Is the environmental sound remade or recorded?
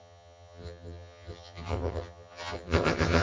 remade